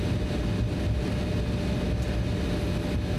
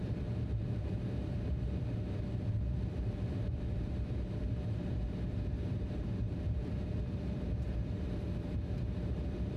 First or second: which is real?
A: first